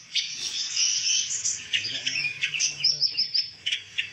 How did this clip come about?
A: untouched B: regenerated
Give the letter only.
B